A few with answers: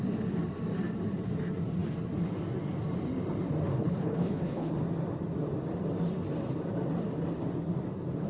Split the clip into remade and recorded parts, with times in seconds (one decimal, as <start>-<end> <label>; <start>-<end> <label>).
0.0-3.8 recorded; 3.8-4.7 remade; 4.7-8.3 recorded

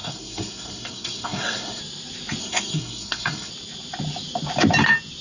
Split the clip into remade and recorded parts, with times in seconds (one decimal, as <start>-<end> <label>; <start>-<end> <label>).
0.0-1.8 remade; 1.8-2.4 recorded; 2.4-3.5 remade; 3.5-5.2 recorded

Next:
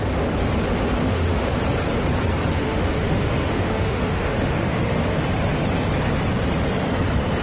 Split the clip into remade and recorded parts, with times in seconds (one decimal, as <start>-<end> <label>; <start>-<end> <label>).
0.0-1.0 recorded; 1.0-1.6 remade; 1.6-2.6 recorded; 2.6-5.2 remade; 5.2-7.4 recorded

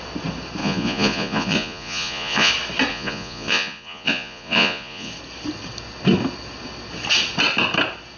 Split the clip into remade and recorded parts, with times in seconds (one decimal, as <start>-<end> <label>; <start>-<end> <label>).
0.0-0.6 recorded; 0.6-2.5 remade; 2.5-2.9 recorded; 2.9-5.1 remade; 5.1-8.2 recorded

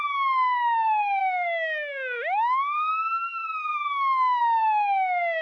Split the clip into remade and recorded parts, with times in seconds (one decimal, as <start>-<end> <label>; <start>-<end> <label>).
0.0-1.2 recorded; 1.2-4.4 remade; 4.4-5.4 recorded

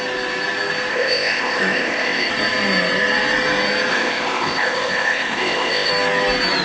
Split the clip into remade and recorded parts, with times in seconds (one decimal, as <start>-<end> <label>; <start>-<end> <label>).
0.0-0.9 recorded; 0.9-2.3 remade; 2.3-3.9 recorded; 3.9-5.9 remade; 5.9-6.6 recorded